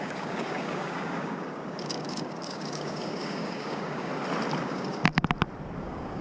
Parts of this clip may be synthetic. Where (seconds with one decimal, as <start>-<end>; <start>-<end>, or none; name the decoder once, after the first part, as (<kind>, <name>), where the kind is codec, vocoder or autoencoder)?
0.0-4.1 (codec, DAC); 4.6-5.0; 5.8-6.2